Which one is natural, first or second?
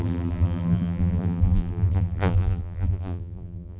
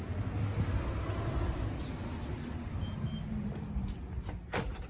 second